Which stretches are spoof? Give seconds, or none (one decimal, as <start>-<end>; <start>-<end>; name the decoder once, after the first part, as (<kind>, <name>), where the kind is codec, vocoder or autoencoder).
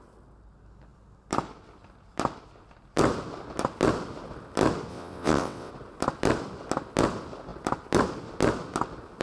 4.9-5.7 (vocoder, WaveNeXt)